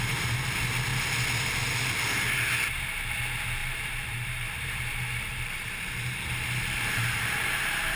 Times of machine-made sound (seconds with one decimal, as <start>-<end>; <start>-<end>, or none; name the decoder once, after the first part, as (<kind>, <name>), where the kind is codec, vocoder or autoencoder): 3.6-8.0 (vocoder, BigVGAN v2)